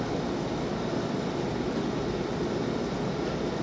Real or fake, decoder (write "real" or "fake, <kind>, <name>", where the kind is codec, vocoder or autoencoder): real